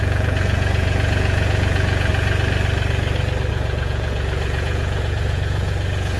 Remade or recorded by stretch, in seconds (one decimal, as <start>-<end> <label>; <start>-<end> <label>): 0.0-2.1 remade; 2.1-3.5 recorded; 3.5-6.2 remade

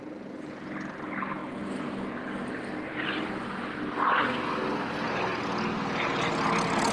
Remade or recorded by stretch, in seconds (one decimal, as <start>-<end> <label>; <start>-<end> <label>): 0.0-6.9 recorded

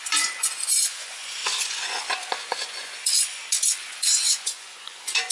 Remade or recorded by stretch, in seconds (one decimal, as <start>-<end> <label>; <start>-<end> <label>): 0.0-5.3 remade

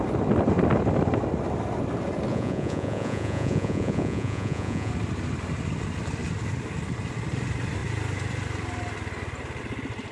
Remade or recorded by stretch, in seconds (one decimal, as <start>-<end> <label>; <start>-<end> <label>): 0.0-2.3 recorded; 2.3-4.9 remade; 4.9-10.1 recorded